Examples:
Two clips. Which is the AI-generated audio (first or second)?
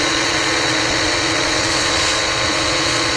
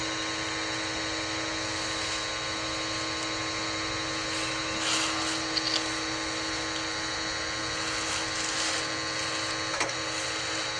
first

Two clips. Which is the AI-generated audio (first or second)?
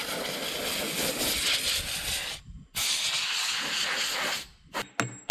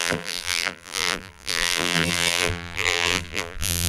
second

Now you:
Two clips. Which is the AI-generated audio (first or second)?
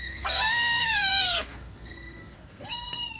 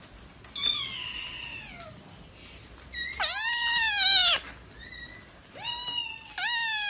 first